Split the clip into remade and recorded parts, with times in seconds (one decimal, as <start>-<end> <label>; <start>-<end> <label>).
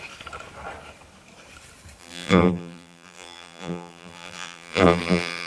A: 0.0-2.0 recorded; 2.0-5.5 remade